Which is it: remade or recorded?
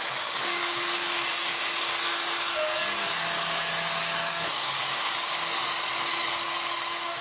remade